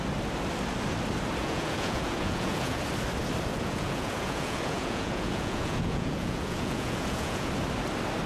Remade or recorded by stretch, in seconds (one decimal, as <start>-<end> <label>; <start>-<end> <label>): 0.0-1.4 recorded; 1.4-2.8 remade; 2.8-3.5 recorded; 3.5-7.5 remade; 7.5-8.3 recorded